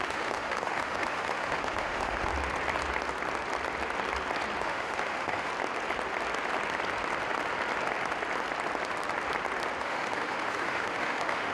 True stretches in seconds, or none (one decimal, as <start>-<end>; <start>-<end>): 2.3-4.6; 5.5-9.8